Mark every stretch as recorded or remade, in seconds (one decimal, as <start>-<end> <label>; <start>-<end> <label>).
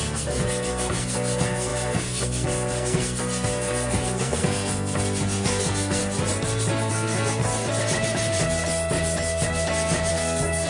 0.0-6.0 remade; 6.0-6.9 recorded; 6.9-7.4 remade; 7.4-10.1 recorded; 10.1-10.7 remade